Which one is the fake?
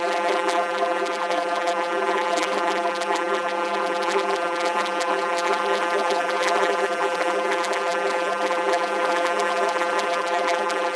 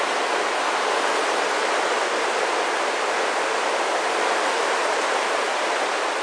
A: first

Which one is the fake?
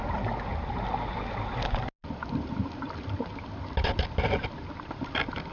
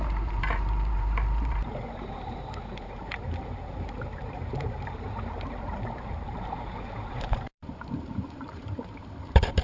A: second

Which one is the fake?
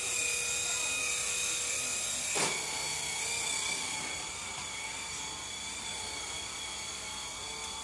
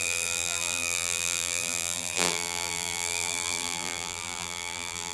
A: second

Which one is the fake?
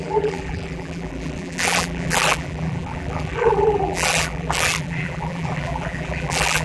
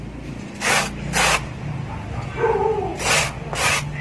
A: first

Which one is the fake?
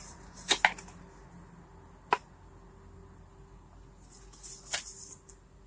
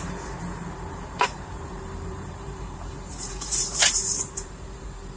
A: second